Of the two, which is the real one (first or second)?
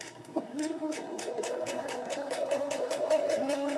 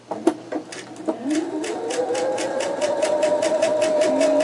second